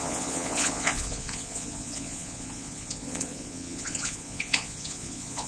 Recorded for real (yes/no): no